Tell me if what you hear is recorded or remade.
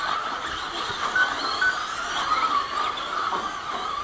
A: recorded